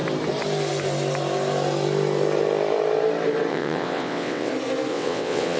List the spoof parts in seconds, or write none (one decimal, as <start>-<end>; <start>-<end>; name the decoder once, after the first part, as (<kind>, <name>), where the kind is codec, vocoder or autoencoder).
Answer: 3.5-4.5 (vocoder, WaveNeXt); 4.9-5.6